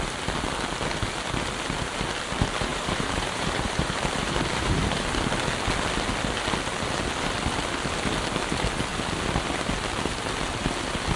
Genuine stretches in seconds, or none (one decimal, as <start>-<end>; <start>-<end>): 0.0-2.7; 5.1-11.2